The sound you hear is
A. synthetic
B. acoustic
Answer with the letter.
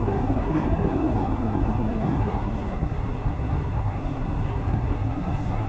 A